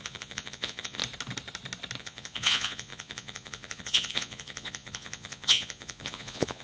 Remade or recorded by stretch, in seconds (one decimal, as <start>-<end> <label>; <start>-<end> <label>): 0.0-1.0 remade; 1.0-2.0 recorded; 2.0-6.6 remade

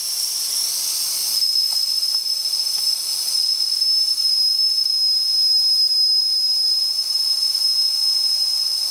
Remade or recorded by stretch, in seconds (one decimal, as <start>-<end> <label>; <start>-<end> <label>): 0.0-8.9 recorded

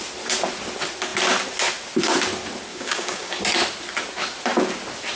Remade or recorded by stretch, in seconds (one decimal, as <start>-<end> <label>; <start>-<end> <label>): 0.0-2.7 recorded; 2.7-3.4 remade; 3.4-5.2 recorded

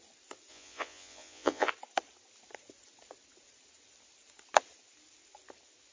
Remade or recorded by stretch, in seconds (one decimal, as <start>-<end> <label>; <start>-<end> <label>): 0.0-0.5 recorded; 0.5-1.7 remade; 1.7-5.9 recorded